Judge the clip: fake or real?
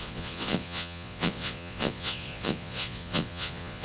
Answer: fake